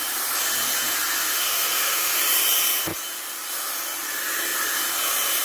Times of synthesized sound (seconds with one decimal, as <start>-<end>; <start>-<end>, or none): 1.2-2.2